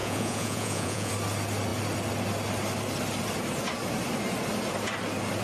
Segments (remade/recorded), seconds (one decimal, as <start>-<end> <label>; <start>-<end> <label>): 0.0-1.1 remade; 1.1-5.4 recorded

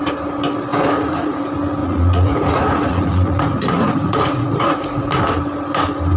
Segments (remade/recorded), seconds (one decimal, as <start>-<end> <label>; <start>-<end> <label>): 0.0-0.7 recorded; 0.7-1.4 remade; 1.4-1.8 recorded; 1.8-5.0 remade; 5.0-6.2 recorded

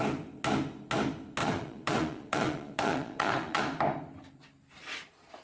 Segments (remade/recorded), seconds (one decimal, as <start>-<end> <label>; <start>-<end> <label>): 0.0-1.4 recorded; 1.4-3.6 remade; 3.6-5.4 recorded

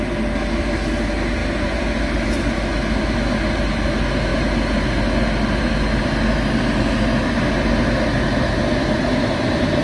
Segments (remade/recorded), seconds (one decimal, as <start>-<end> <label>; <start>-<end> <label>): 0.0-9.8 recorded

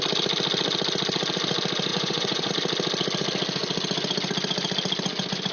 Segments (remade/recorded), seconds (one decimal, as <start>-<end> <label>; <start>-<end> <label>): 0.0-1.9 recorded; 1.9-2.5 remade; 2.5-5.5 recorded